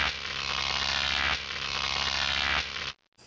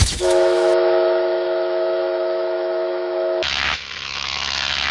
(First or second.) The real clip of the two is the first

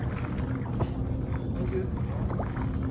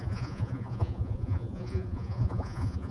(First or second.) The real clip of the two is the first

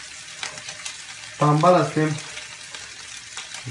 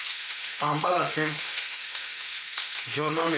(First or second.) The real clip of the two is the first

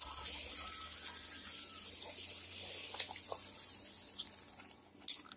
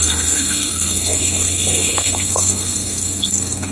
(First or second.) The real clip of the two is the first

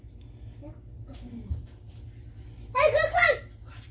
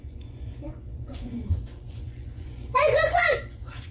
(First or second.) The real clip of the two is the first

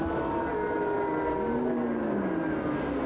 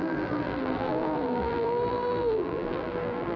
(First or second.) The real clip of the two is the first